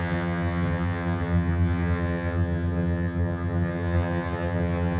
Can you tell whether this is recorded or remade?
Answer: remade